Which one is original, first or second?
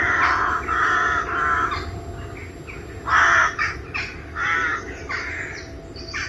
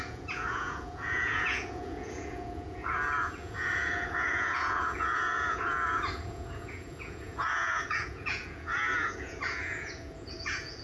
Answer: first